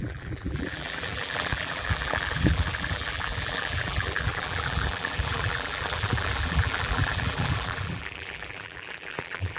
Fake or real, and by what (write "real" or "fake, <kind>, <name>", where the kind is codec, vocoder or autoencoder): fake, vocoder, BigVGAN v2